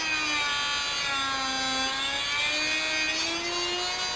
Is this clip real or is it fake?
real